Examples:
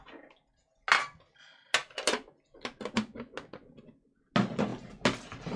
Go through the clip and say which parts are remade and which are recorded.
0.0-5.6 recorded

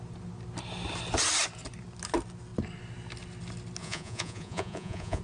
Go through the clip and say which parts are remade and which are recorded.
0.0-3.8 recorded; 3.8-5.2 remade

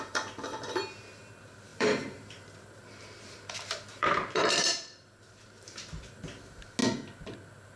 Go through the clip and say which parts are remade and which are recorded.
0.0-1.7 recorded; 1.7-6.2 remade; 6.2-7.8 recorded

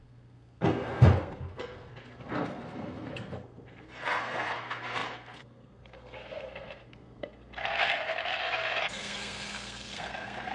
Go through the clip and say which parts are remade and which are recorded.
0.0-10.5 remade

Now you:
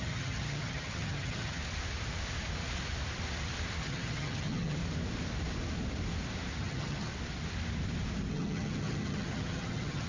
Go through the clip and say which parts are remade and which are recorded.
0.0-1.6 remade; 1.6-3.8 recorded; 3.8-4.8 remade; 4.8-6.6 recorded; 6.6-7.1 remade; 7.1-8.3 recorded; 8.3-10.1 remade